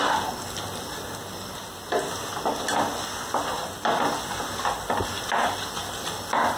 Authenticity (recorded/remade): recorded